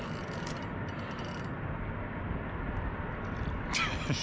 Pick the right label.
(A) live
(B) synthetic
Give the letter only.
A